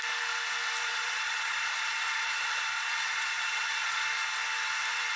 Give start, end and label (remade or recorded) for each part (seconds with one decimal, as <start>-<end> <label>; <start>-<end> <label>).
0.0-0.9 recorded; 0.9-4.0 remade; 4.0-5.2 recorded